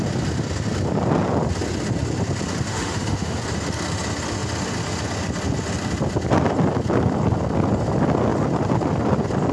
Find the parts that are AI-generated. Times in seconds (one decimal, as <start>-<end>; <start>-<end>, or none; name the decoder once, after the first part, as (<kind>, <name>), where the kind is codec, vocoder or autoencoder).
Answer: 2.7-3.4 (autoencoder, DAC-VAE)